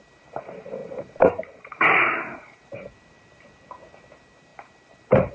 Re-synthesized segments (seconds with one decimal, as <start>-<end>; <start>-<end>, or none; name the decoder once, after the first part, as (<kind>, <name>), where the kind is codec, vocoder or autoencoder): 0.0-5.3 (vocoder, BigVGAN v2)